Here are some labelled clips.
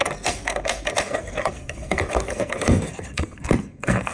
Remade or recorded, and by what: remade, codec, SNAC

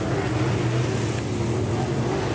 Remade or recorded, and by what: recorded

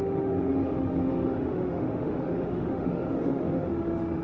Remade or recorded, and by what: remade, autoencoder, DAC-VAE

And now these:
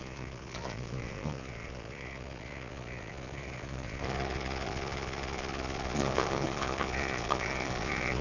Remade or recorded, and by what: remade, vocoder, Vocos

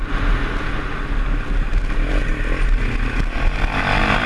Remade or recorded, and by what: recorded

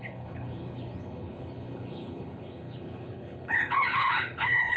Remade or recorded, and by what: remade, codec, HILCodec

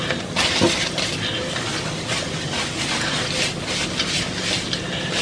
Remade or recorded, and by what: recorded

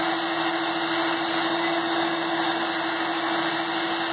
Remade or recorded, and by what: recorded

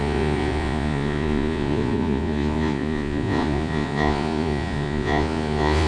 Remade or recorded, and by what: remade, vocoder, Vocos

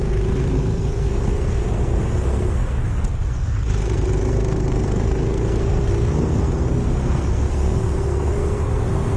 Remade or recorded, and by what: remade, codec, SNAC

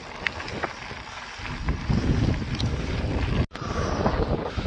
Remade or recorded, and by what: recorded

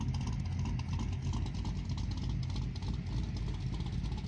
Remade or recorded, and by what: recorded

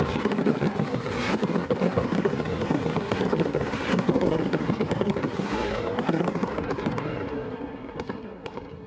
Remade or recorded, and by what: remade, codec, SNAC